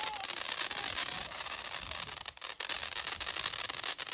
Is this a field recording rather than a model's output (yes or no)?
yes